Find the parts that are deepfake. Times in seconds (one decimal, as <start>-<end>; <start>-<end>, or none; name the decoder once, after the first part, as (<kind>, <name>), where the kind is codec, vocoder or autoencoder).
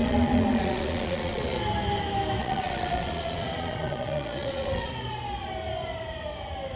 0.0-1.6 (vocoder, Vocos); 2.4-4.9